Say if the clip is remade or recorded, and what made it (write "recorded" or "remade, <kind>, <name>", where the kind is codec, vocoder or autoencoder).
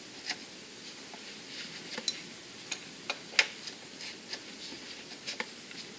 recorded